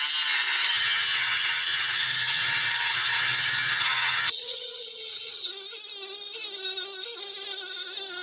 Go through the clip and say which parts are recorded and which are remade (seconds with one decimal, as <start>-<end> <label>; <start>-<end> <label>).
0.0-0.6 recorded; 0.6-5.5 remade; 5.5-8.2 recorded